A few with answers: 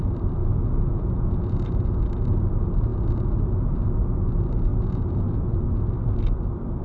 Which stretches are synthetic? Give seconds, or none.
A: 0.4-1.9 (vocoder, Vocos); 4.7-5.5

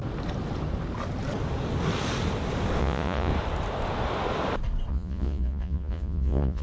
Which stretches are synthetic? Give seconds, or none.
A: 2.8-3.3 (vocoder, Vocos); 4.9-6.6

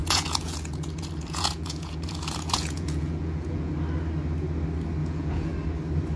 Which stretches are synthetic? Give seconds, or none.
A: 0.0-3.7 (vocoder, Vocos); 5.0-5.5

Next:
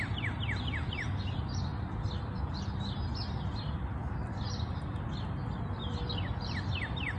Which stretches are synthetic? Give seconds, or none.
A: none

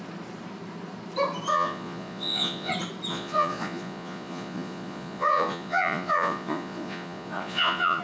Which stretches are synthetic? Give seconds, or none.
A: 1.5-2.7 (vocoder, Vocos); 3.1-8.0

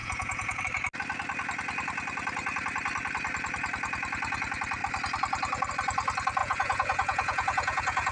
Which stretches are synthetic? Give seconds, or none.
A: 0.0-0.6 (vocoder, Vocos); 6.4-8.1

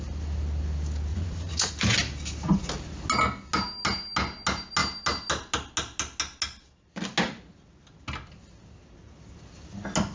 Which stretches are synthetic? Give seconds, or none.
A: 1.1-1.7 (vocoder, Vocos)